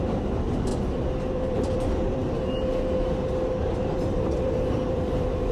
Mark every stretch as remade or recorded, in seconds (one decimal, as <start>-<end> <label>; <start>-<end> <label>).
0.0-0.7 remade; 0.7-1.3 recorded; 1.3-2.2 remade; 2.2-3.6 recorded; 3.6-5.5 remade